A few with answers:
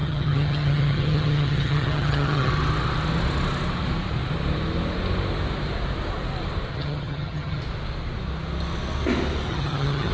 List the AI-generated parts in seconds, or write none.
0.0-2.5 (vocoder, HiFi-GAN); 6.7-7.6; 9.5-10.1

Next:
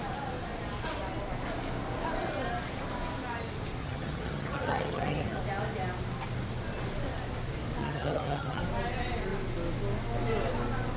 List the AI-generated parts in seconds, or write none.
3.8-5.4 (vocoder, HiFi-GAN); 7.8-8.6

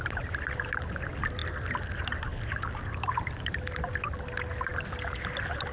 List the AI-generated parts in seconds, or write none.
none

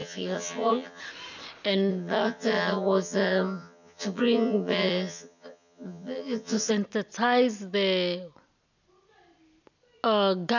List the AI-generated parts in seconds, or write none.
0.0-1.0 (vocoder, HiFi-GAN); 1.9-6.7

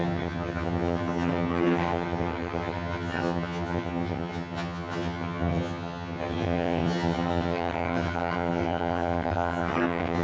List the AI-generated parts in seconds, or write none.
0.0-10.2 (vocoder, HiFi-GAN)

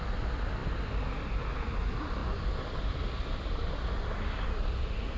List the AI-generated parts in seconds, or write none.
none